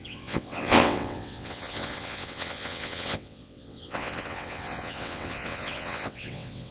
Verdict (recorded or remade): remade